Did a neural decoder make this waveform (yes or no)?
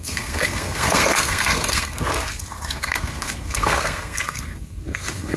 yes